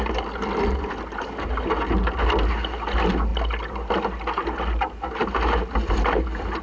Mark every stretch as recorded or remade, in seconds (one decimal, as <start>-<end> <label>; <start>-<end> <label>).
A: 0.0-6.6 recorded

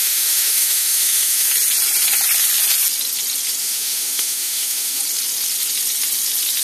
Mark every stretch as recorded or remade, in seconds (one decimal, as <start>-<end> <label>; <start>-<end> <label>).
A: 0.0-1.5 remade; 1.5-3.6 recorded; 3.6-5.0 remade; 5.0-6.6 recorded